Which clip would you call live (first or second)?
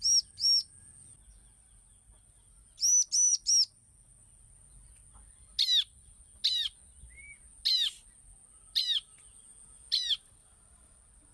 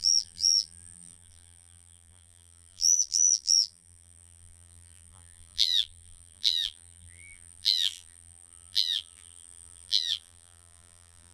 first